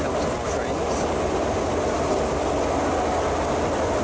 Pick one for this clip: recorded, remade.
recorded